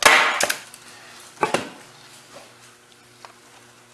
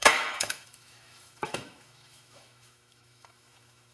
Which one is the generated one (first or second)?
second